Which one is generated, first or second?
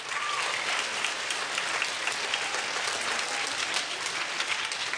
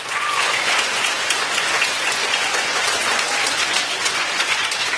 second